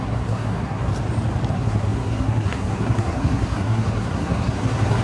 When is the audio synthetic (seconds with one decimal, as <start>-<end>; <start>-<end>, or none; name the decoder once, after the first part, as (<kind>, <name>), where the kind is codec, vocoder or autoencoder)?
0.0-0.9 (codec, SNAC); 1.5-5.0